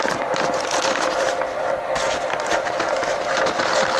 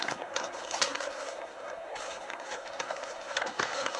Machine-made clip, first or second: second